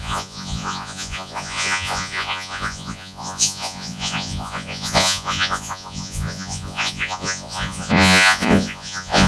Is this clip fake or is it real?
fake